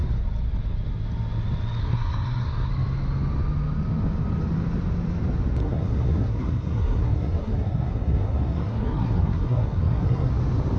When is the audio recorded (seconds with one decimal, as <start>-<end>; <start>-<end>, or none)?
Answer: 0.0-1.8; 2.7-5.6; 10.3-10.8